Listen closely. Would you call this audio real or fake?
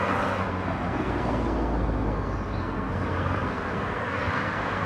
fake